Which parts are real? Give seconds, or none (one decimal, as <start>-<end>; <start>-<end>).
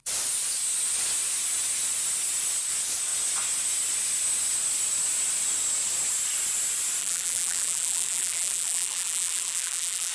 0.0-7.0